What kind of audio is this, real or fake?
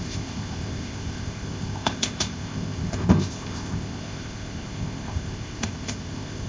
fake